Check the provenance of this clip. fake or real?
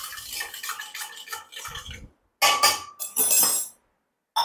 real